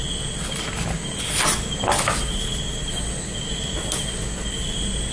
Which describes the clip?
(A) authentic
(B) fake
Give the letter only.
A